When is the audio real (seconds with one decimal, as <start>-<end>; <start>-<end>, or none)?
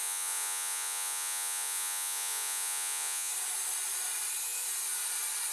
3.3-5.5